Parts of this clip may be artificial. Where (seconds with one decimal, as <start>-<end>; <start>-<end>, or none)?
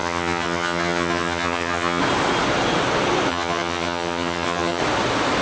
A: 0.0-2.0; 3.3-4.8